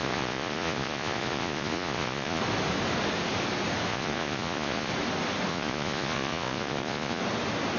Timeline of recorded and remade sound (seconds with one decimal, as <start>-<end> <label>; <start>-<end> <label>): 0.0-2.4 remade; 2.4-3.9 recorded; 3.9-4.9 remade; 4.9-5.5 recorded; 5.5-7.2 remade; 7.2-7.8 recorded